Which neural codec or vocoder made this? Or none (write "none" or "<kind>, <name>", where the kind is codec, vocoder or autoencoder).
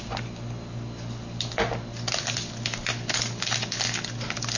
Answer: none